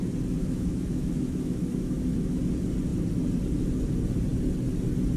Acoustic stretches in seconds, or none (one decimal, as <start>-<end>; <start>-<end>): 0.0-0.4; 2.4-5.2